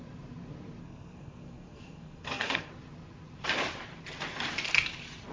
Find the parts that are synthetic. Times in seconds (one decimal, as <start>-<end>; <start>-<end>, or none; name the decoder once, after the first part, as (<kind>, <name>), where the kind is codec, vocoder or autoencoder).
0.8-2.7 (codec, SNAC)